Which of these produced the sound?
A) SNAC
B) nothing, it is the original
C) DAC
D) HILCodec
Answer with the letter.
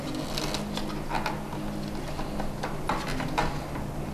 B